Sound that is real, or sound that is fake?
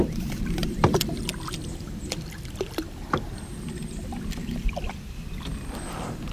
fake